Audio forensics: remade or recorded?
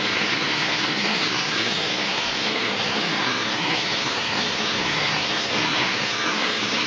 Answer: remade